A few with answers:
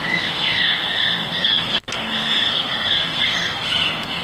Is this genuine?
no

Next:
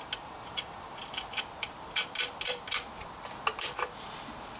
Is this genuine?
yes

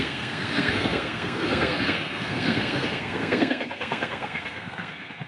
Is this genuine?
no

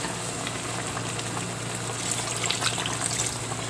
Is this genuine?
yes